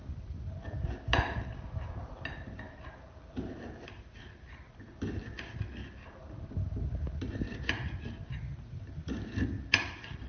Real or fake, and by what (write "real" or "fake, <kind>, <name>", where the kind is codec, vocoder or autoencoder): real